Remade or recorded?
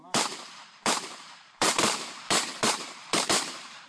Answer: remade